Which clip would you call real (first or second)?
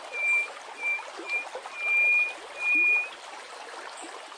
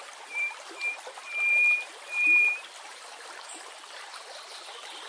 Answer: first